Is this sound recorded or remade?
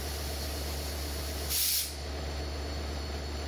recorded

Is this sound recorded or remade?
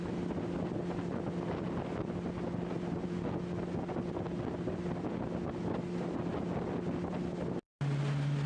recorded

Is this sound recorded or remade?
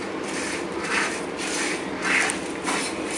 remade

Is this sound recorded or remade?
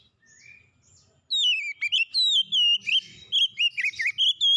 recorded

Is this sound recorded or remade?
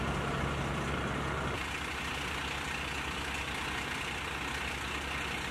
recorded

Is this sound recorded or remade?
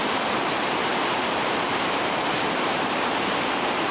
remade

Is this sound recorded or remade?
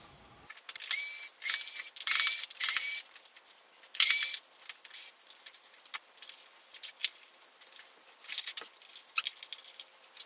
recorded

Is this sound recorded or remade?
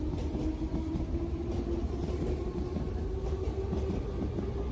recorded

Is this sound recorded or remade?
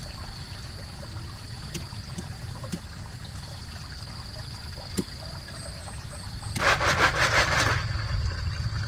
recorded